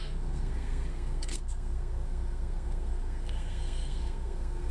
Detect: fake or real fake